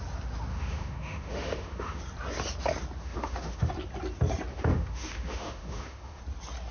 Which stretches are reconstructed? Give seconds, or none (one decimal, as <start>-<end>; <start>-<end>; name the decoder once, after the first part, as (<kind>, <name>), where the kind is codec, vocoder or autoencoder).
0.5-2.0 (autoencoder, DAC-VAE); 3.0-3.7; 4.5-6.2